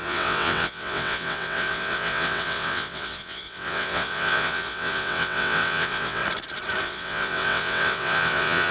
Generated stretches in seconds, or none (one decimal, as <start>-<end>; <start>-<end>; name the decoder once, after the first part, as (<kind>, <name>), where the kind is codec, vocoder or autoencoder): 0.0-6.2 (vocoder, WaveNeXt); 6.8-8.7